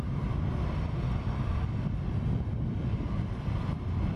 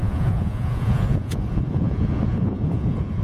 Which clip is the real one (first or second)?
first